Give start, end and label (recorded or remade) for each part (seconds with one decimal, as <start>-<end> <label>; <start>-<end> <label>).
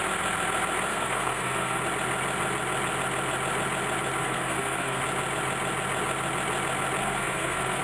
0.0-0.9 recorded; 0.9-1.8 remade; 1.8-4.2 recorded; 4.2-5.0 remade; 5.0-7.0 recorded; 7.0-7.8 remade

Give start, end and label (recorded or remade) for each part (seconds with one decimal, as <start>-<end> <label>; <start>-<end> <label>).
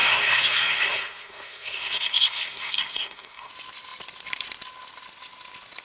0.0-3.5 remade; 3.5-5.8 recorded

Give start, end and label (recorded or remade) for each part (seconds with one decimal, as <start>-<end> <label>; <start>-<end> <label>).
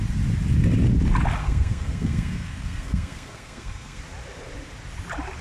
0.0-1.4 recorded; 1.4-4.0 remade; 4.0-5.4 recorded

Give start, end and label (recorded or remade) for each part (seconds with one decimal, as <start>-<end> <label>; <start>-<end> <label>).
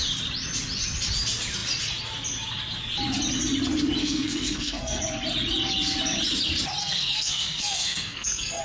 0.0-4.0 recorded; 4.0-5.0 remade; 5.0-6.8 recorded; 6.8-8.6 remade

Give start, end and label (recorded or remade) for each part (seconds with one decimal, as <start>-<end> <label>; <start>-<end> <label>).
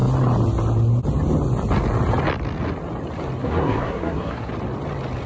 0.0-3.4 recorded; 3.4-4.5 remade; 4.5-5.3 recorded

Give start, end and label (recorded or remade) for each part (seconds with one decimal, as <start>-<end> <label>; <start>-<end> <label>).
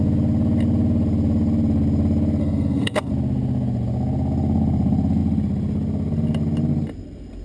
0.0-2.4 recorded; 2.4-3.1 remade; 3.1-7.4 recorded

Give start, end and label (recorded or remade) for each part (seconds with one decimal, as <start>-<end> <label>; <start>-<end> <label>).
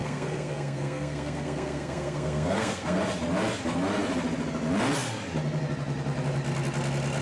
0.0-3.0 remade; 3.0-7.2 recorded